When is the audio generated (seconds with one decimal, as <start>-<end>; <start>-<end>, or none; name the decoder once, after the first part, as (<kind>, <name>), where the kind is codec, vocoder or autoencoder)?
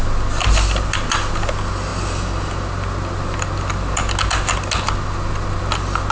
none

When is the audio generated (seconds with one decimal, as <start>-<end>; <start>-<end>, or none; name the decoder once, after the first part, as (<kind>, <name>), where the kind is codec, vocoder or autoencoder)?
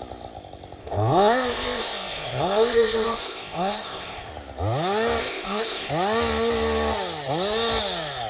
0.8-4.3 (codec, ZipCodec); 5.2-5.9